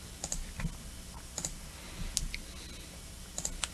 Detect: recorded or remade recorded